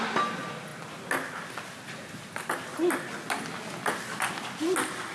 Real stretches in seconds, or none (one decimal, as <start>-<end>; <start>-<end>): 0.0-5.1